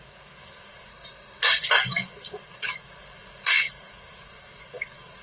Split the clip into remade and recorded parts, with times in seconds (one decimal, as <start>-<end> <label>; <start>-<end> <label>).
0.0-0.9 remade; 0.9-1.6 recorded; 1.6-5.2 remade

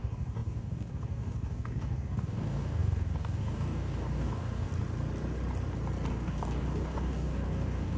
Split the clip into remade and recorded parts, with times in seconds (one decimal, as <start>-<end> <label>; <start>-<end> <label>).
0.0-4.7 remade; 4.7-6.1 recorded; 6.1-8.0 remade

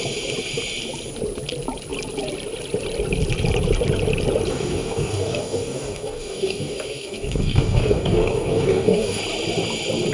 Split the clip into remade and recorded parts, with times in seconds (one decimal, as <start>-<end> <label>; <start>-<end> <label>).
0.0-4.5 recorded; 4.5-9.2 remade; 9.2-10.1 recorded

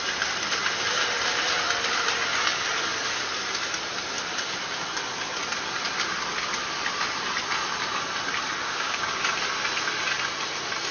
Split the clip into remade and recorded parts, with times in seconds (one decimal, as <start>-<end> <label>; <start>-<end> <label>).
0.0-8.6 recorded; 8.6-9.1 remade; 9.1-10.9 recorded

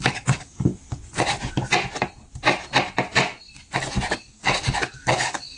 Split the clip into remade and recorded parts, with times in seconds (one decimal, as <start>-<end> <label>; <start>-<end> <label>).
0.0-0.7 remade; 0.7-4.1 recorded; 4.1-5.6 remade